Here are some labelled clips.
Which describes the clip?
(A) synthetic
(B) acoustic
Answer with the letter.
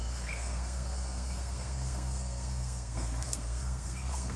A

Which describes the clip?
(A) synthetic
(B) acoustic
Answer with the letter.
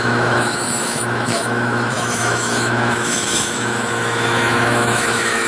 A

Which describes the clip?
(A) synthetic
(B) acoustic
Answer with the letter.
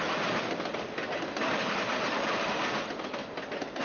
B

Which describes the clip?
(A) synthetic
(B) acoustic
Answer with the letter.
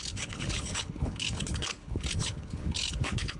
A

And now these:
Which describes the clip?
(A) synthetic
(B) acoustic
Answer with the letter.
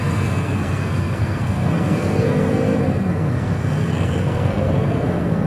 A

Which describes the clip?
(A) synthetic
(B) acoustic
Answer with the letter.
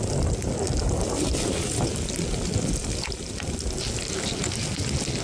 B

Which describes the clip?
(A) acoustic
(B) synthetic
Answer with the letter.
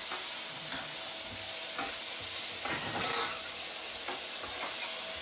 A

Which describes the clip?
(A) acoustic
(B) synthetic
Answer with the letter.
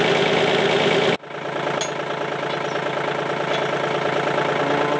A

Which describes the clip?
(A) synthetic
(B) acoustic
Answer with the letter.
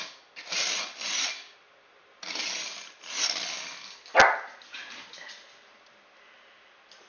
B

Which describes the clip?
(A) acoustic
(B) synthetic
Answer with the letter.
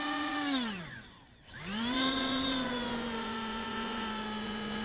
B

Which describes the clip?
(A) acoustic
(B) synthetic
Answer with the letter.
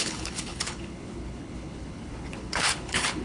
B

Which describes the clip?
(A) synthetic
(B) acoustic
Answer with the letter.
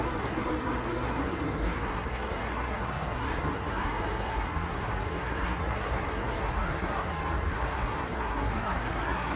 A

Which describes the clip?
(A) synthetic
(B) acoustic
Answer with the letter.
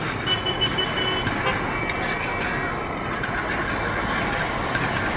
B